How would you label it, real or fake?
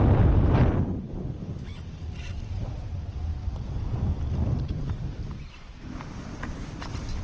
real